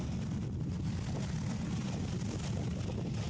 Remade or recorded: recorded